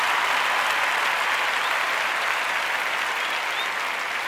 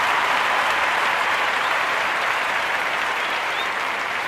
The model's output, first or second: second